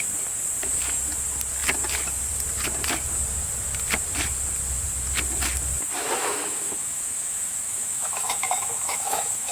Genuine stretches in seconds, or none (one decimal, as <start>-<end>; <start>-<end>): 0.0-6.2